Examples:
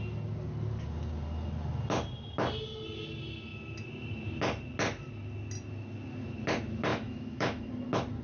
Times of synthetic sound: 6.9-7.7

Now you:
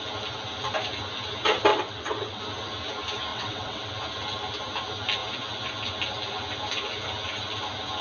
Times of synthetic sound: 1.7-2.4; 3.3-3.9

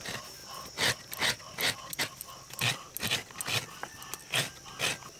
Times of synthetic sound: none

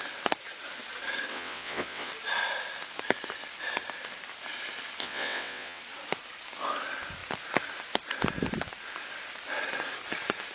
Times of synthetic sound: 1.3-2.1; 5.0-5.8

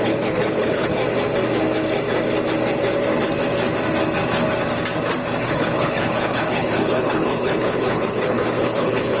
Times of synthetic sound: 0.0-1.0; 5.4-9.2